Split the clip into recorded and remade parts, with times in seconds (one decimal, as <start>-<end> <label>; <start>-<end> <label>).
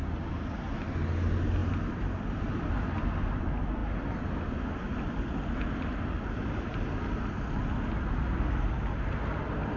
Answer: 0.0-9.8 recorded